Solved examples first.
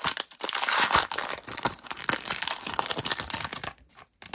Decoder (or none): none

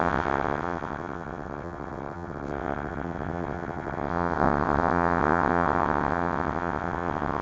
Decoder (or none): vocoder, WaveNeXt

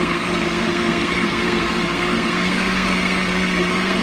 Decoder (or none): codec, SNAC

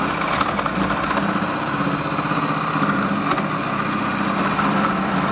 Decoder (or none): none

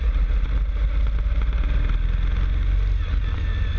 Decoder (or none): none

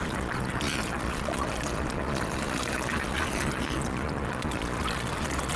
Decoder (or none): vocoder, Vocos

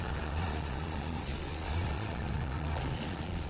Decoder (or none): vocoder, Vocos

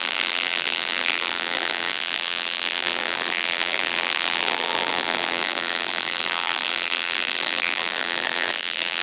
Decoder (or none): vocoder, BigVGAN v2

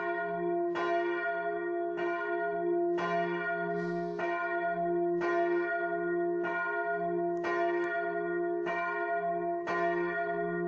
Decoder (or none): none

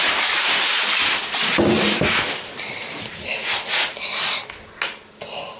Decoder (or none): none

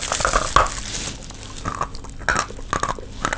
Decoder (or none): none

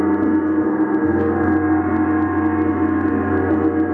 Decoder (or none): none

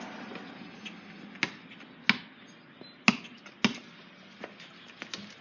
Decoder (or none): none